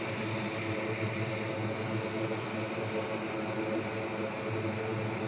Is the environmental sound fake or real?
real